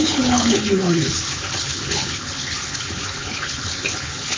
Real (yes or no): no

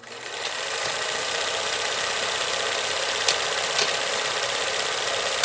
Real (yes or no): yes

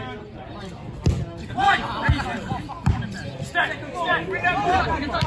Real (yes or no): yes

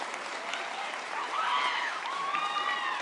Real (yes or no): yes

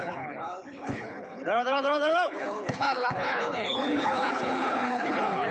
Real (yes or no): no